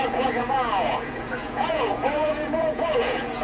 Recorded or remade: remade